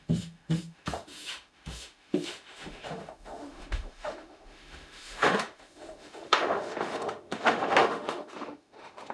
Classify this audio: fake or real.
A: fake